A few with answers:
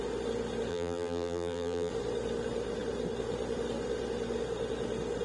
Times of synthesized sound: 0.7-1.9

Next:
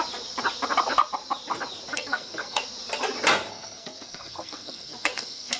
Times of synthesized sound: 1.9-2.6; 3.5-5.6

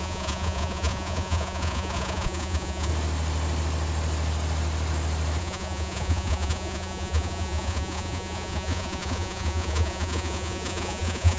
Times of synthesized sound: 0.0-2.9; 5.4-11.4

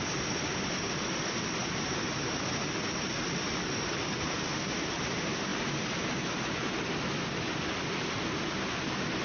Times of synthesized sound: none